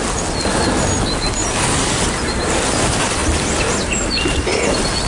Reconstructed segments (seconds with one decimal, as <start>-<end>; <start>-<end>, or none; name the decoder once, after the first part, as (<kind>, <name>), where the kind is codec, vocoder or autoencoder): none